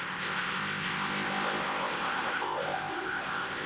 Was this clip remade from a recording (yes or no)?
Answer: yes